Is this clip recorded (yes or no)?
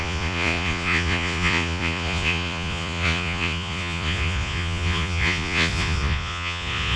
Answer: no